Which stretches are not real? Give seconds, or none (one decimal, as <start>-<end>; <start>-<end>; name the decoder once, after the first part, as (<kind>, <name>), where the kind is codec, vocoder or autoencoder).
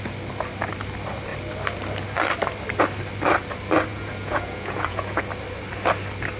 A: 3.9-5.2 (vocoder, Vocos)